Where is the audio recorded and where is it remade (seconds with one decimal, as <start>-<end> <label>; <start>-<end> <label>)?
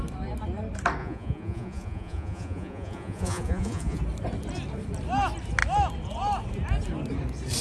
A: 0.0-1.0 recorded; 1.0-4.0 remade; 4.0-7.6 recorded